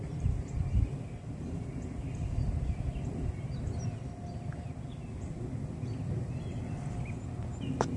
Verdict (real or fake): real